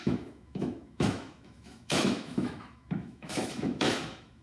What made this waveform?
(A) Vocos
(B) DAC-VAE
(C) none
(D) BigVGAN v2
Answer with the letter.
B